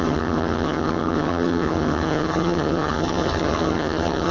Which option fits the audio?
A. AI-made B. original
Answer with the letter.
A